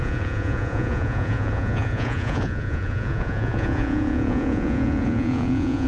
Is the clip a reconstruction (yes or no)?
yes